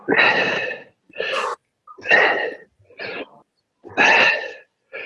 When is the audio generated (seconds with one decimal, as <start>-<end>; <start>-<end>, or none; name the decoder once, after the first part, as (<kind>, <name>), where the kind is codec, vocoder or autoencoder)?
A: 0.0-1.6 (vocoder, BigVGAN v2)